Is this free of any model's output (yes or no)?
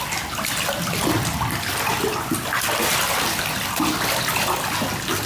yes